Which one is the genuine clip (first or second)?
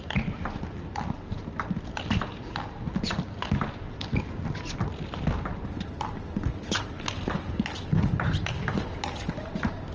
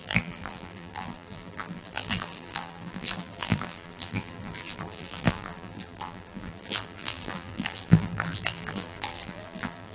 first